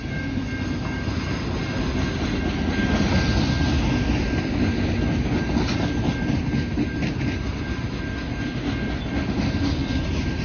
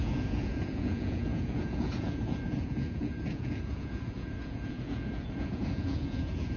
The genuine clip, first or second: first